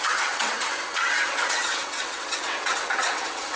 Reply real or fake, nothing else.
fake